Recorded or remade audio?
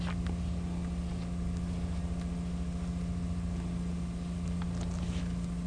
recorded